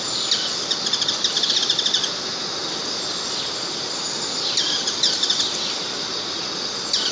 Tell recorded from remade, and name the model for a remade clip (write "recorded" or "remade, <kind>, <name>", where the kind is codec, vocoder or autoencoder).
recorded